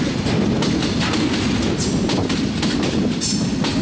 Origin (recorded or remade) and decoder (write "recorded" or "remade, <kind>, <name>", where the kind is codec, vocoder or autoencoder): recorded